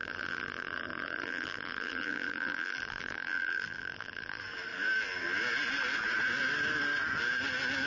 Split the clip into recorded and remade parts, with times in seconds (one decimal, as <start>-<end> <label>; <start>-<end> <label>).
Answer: 0.0-4.4 remade; 4.4-7.9 recorded